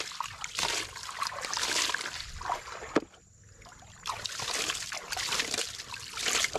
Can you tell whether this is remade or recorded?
recorded